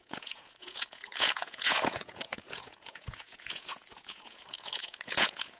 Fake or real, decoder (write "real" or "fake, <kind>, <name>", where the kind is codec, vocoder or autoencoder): fake, vocoder, Vocos